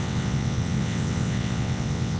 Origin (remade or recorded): remade